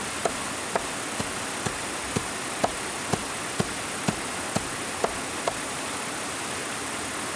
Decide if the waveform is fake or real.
real